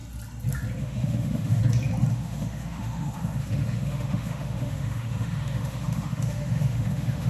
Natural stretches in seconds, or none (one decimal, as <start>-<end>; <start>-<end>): 0.0-0.8; 1.6-2.1